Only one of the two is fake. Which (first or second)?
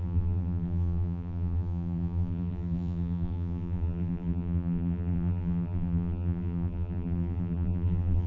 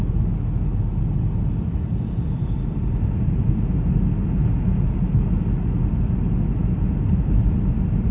first